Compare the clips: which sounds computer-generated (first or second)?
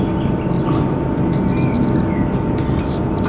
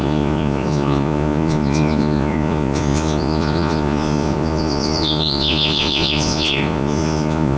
second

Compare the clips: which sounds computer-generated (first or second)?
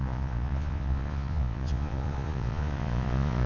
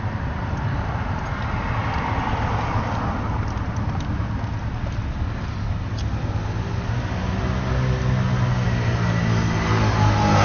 first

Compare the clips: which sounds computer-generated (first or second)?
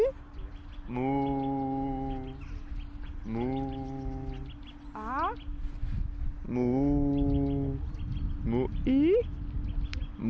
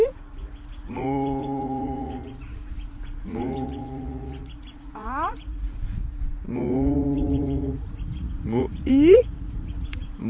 second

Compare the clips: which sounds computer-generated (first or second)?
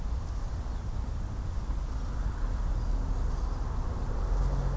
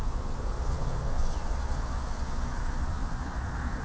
second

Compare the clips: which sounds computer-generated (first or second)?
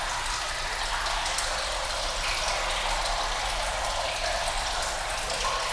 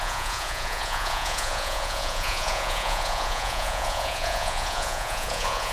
second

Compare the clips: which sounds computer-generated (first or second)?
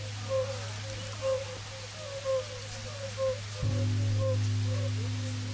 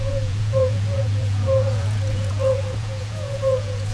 second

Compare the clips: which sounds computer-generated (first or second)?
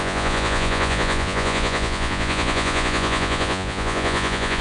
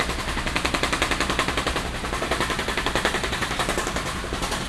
first